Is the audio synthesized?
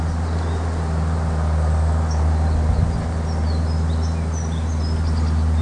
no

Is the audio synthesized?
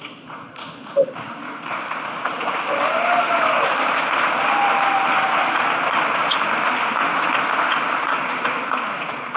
no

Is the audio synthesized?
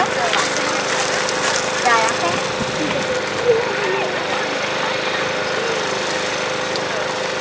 no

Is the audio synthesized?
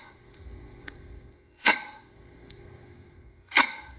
yes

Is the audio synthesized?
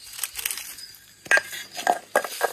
no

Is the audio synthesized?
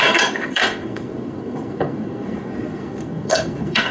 yes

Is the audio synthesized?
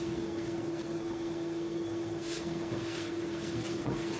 yes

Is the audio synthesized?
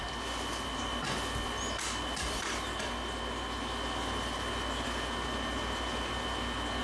no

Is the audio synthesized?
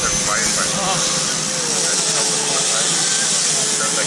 no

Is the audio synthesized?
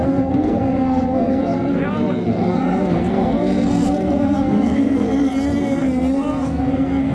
yes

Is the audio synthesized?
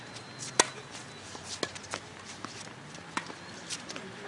no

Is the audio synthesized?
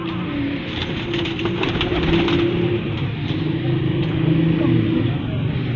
no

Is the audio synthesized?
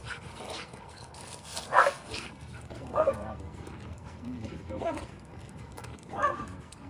yes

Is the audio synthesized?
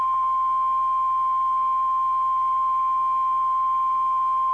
no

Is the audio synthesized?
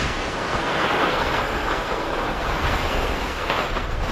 yes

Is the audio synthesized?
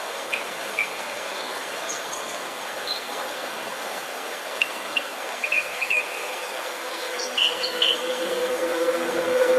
yes